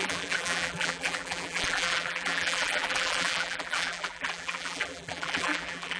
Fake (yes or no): yes